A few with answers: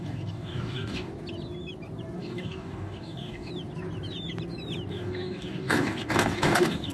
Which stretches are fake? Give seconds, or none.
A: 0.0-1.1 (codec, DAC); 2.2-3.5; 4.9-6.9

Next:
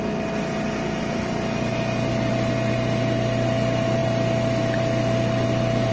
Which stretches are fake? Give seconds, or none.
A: none